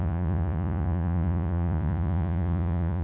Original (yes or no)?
no